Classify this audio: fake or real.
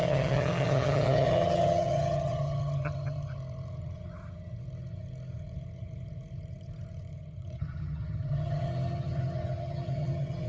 fake